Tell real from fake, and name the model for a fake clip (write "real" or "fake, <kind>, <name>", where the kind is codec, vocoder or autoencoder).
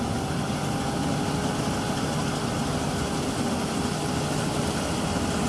real